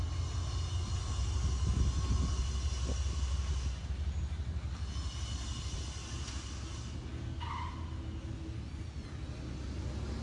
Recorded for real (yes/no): yes